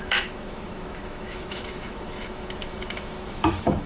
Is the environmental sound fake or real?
fake